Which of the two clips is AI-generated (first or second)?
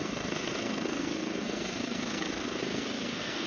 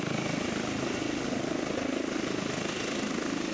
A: first